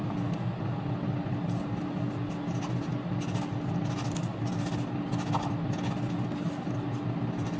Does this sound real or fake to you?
real